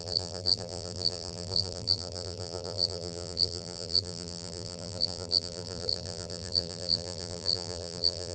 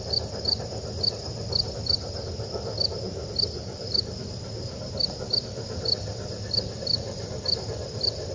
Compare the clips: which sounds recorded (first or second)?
second